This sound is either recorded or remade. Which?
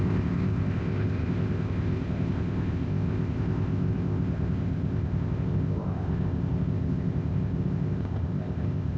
remade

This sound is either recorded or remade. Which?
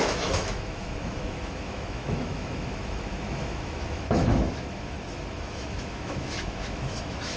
remade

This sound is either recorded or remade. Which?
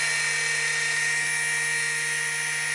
recorded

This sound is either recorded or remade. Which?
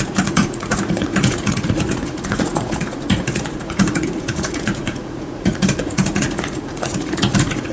remade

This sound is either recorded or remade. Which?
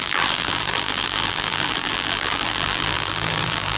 remade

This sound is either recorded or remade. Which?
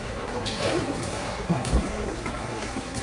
remade